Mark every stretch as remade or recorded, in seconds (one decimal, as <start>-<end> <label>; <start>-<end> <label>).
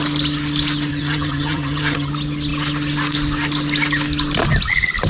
0.0-0.9 recorded; 0.9-2.1 remade; 2.1-5.1 recorded